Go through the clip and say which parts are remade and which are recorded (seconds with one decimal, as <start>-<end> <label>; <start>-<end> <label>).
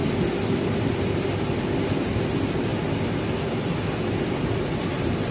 0.0-5.3 recorded